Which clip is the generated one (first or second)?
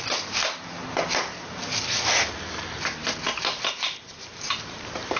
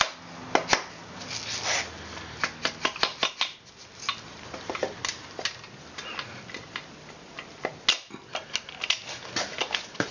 first